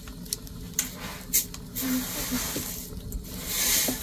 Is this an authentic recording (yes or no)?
yes